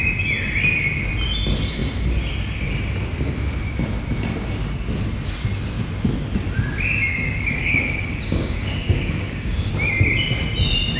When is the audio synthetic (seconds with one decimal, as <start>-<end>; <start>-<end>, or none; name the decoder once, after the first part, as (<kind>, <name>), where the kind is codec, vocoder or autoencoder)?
7.1-9.7 (codec, DAC)